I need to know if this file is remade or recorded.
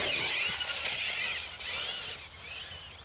recorded